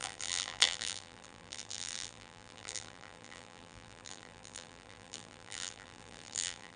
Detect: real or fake fake